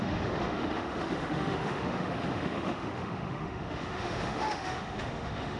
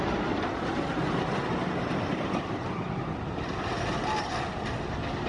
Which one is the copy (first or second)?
first